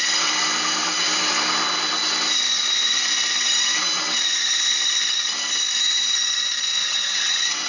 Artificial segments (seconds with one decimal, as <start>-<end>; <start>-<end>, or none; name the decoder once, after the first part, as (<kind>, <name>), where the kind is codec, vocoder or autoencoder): 6.8-7.7 (vocoder, WaveNeXt)